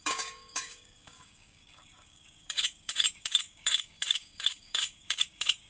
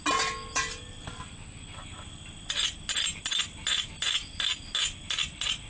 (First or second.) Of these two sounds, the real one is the second